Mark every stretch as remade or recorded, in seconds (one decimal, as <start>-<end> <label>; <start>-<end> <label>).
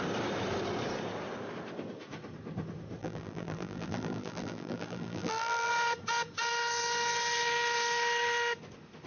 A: 0.0-3.0 recorded; 3.0-5.7 remade; 5.7-9.1 recorded